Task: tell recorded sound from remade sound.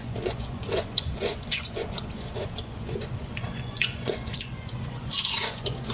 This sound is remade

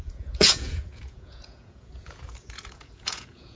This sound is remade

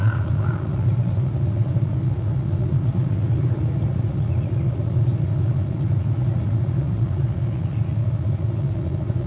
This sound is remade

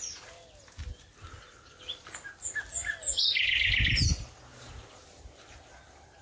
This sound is recorded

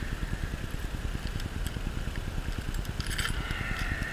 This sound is recorded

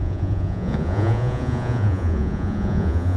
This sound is remade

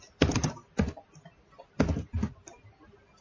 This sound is recorded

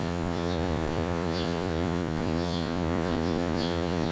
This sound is remade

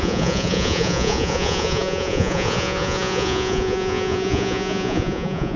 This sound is remade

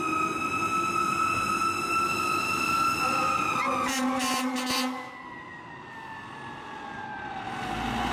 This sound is recorded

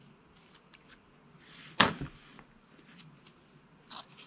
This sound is recorded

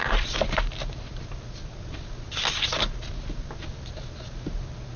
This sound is recorded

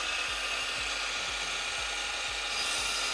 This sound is recorded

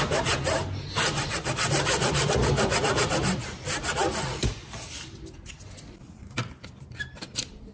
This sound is recorded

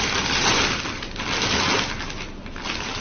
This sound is recorded